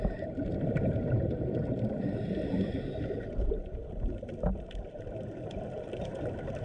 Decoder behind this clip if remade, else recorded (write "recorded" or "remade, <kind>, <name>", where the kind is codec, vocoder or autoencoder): remade, vocoder, BigVGAN v2